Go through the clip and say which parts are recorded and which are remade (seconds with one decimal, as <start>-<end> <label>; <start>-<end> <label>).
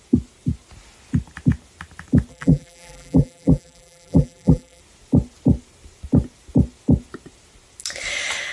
0.0-2.3 recorded; 2.3-4.8 remade; 4.8-8.5 recorded